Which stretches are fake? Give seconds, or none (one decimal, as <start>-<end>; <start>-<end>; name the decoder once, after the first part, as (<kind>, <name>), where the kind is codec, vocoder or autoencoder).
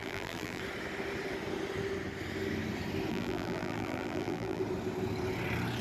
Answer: 0.0-0.6 (vocoder, BigVGAN v2); 3.1-4.6